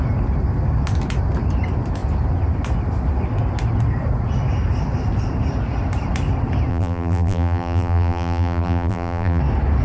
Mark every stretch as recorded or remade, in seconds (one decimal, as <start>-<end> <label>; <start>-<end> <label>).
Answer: 0.0-6.7 recorded; 6.7-9.4 remade; 9.4-9.8 recorded